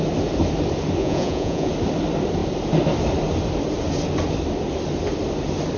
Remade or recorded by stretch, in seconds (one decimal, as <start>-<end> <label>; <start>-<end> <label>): 0.0-1.0 recorded; 1.0-1.7 remade; 1.7-5.8 recorded